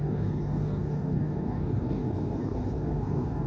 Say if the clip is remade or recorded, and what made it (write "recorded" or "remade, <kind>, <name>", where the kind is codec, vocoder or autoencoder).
remade, codec, DAC